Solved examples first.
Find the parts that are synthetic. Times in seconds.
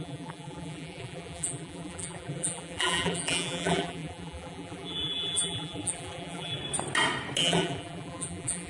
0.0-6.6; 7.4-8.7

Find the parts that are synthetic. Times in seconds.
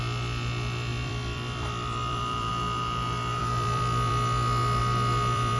0.9-2.5; 3.4-4.1; 4.8-5.6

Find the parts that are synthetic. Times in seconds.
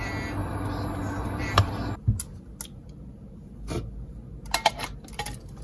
0.4-1.6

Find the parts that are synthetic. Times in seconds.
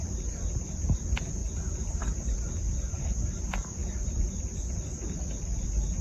3.8-4.3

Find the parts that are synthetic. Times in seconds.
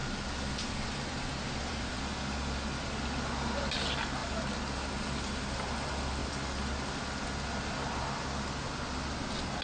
0.0-2.0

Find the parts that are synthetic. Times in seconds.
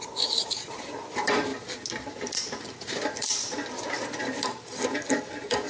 0.0-1.5; 2.4-5.7